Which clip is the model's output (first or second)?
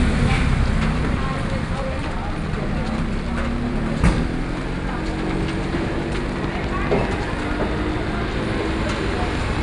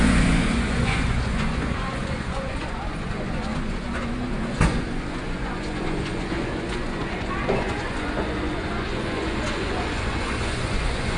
second